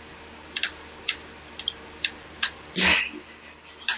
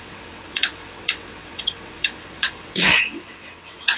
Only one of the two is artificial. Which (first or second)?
second